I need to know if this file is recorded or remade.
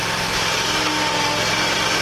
recorded